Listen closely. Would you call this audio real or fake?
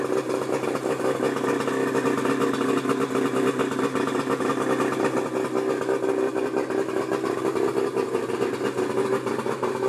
real